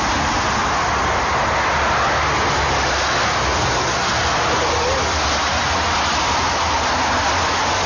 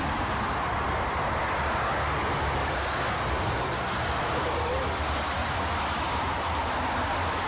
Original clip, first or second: first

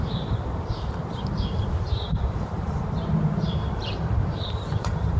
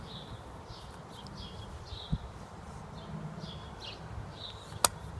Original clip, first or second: second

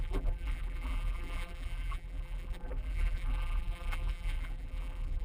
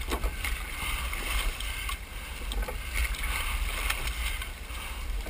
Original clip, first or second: second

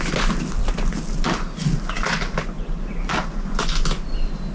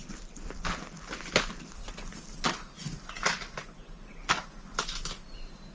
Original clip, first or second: first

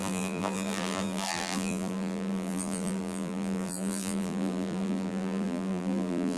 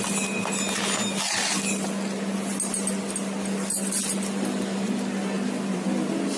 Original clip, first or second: second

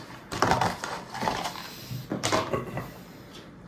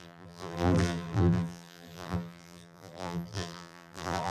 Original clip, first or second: first